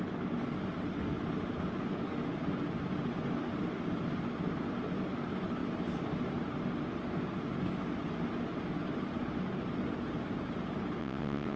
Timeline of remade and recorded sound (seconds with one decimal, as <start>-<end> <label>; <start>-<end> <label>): 0.0-11.0 recorded; 11.0-11.6 remade